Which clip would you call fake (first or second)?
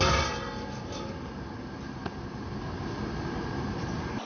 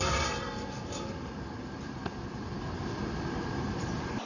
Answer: second